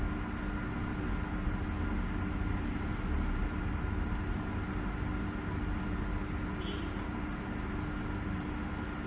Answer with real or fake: real